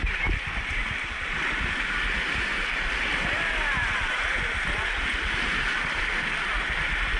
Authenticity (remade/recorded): recorded